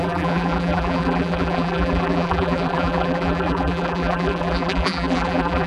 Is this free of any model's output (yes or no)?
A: no